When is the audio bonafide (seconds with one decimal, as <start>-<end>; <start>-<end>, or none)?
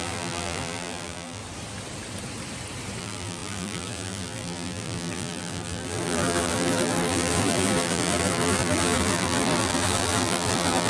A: 1.4-3.0